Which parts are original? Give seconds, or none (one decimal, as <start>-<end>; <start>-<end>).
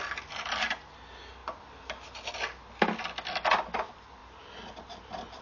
0.0-5.4